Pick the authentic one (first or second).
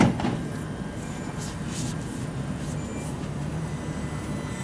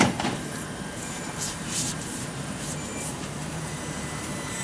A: first